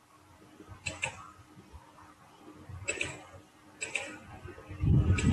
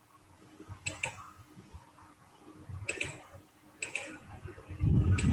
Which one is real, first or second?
first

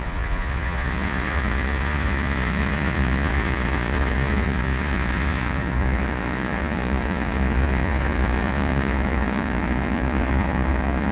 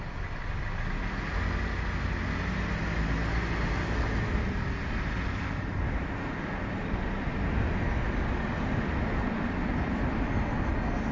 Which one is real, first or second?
second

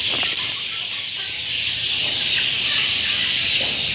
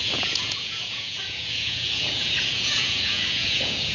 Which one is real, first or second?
first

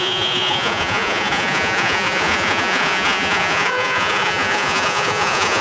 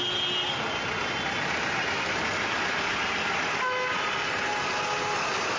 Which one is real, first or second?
second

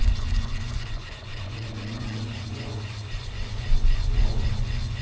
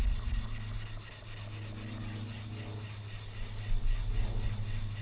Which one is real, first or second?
second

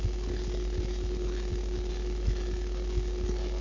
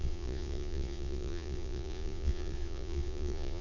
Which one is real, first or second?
first